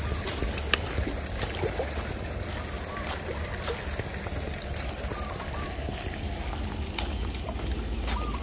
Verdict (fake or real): real